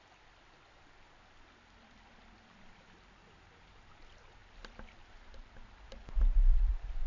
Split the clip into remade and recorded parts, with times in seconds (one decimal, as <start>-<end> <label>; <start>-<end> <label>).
0.0-4.4 recorded; 4.4-6.2 remade; 6.2-7.1 recorded